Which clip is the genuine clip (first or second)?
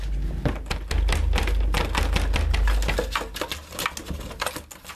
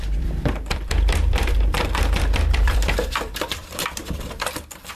first